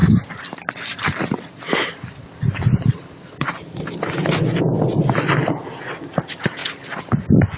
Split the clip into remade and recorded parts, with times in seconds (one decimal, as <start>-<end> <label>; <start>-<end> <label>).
0.0-4.6 remade; 4.6-7.6 recorded